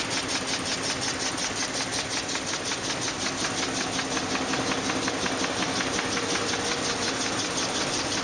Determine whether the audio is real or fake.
real